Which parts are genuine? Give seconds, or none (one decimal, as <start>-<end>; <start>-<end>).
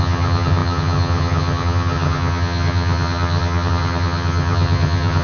none